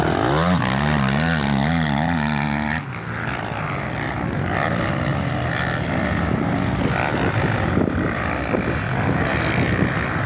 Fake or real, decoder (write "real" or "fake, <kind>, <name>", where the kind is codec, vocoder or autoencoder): real